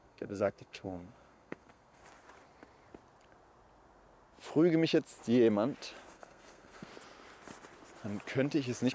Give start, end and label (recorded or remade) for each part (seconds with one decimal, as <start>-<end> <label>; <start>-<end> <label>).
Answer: 0.0-2.0 remade; 2.0-6.1 recorded; 6.1-6.9 remade; 6.9-8.9 recorded